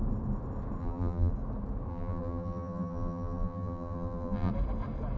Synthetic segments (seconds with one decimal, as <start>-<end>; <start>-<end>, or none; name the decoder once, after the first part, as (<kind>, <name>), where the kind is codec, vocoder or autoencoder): 0.8-1.3 (vocoder, BigVGAN v2); 1.9-4.5

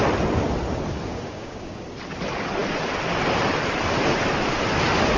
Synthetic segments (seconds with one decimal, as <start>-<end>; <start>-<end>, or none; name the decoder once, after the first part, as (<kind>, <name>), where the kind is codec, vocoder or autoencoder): 1.1-1.8 (codec, DAC)

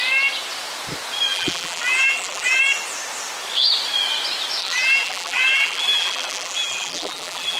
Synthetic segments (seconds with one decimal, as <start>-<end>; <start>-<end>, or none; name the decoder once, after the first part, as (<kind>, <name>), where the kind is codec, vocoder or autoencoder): 1.3-2.6 (vocoder, BigVGAN v2); 4.6-7.6

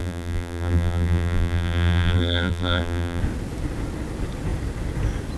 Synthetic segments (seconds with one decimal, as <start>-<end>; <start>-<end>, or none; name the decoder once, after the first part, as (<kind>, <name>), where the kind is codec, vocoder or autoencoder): 0.0-3.2 (vocoder, BigVGAN v2)

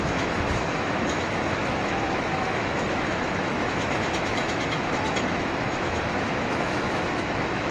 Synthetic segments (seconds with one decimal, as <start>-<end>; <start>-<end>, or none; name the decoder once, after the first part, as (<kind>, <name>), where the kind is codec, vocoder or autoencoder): 0.0-7.7 (autoencoder, DAC-VAE)

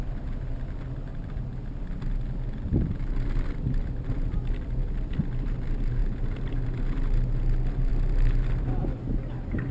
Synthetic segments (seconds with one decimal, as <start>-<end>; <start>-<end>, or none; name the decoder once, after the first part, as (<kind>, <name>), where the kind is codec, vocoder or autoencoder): 1.1-1.6 (vocoder, BigVGAN v2)

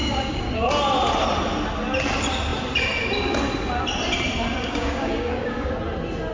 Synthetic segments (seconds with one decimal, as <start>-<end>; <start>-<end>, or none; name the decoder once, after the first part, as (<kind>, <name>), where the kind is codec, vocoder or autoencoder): 0.0-0.7 (codec, DAC); 4.6-5.7

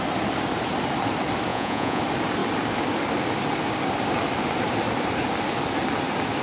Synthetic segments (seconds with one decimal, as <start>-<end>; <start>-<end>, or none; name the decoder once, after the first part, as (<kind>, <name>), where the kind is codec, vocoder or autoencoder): 1.5-2.0 (vocoder, Vocos)